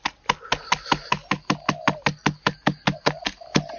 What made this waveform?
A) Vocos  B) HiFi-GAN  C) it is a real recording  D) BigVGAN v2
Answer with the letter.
C